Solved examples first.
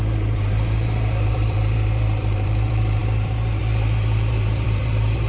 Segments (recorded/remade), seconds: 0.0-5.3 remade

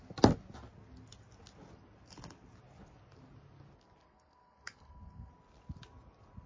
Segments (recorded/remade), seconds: 0.0-4.0 recorded; 4.0-5.3 remade; 5.3-6.5 recorded

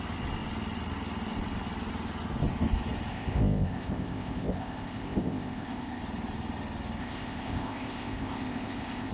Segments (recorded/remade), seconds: 0.0-3.1 recorded; 3.1-6.0 remade; 6.0-7.0 recorded; 7.0-9.1 remade